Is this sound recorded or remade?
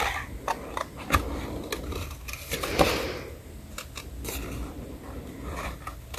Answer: recorded